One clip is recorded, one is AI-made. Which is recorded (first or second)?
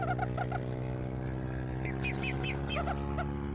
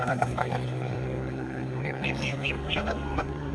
first